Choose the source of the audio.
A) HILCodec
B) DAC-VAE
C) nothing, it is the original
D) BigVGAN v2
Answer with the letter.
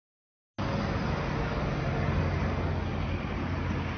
C